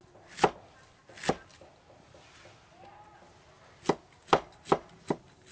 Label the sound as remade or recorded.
recorded